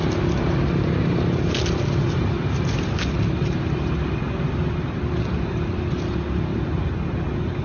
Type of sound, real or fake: real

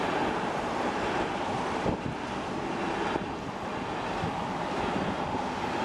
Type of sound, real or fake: real